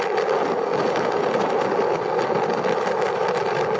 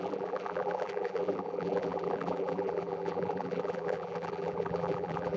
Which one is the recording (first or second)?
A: first